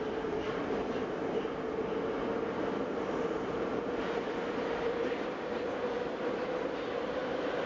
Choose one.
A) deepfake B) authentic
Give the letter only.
B